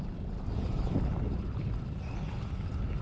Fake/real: real